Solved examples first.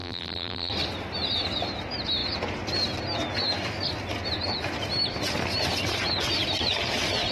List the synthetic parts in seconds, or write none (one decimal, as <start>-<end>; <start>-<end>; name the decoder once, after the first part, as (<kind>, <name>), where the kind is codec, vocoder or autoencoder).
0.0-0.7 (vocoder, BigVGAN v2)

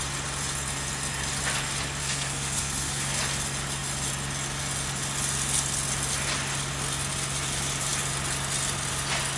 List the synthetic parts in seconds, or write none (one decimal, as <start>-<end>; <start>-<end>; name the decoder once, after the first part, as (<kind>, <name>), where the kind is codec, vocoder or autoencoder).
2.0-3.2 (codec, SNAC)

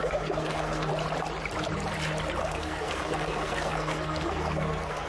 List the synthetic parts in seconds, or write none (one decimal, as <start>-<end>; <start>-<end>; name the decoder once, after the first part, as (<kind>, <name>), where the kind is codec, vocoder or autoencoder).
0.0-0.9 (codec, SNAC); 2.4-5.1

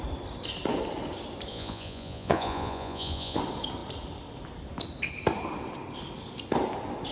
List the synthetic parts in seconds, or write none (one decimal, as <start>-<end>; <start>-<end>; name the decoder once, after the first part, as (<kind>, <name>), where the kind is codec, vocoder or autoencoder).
1.5-3.4 (vocoder, Vocos)

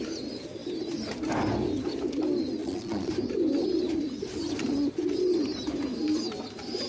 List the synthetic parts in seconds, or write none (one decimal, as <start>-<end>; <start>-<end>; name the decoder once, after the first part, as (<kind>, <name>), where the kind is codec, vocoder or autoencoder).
2.6-3.1 (vocoder, Vocos)